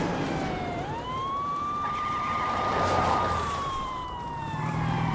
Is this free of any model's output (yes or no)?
no